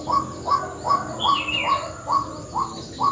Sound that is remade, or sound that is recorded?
recorded